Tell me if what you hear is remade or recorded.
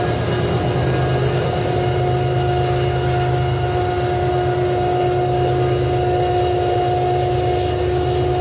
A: recorded